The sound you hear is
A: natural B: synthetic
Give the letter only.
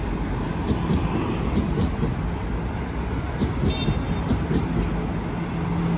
A